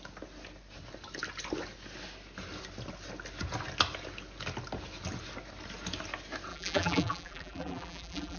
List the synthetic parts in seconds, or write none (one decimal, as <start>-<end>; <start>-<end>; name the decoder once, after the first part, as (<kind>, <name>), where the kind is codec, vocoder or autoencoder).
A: 6.5-8.4 (vocoder, BigVGAN v2)